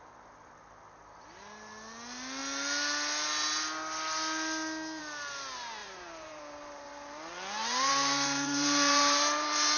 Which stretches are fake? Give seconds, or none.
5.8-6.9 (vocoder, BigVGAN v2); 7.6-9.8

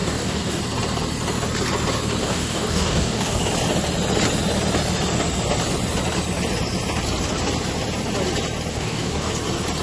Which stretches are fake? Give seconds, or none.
0.0-0.6 (codec, DAC); 2.2-3.4; 8.7-9.3

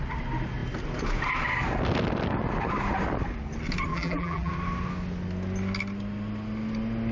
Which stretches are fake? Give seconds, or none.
3.9-4.5 (vocoder, BigVGAN v2)

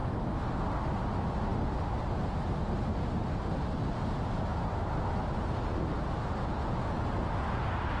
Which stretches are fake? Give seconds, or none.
0.0-0.5 (autoencoder, DAC-VAE)

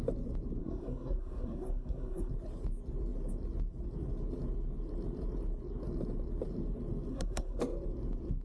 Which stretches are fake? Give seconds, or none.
0.6-2.3 (codec, SNAC); 7.1-7.6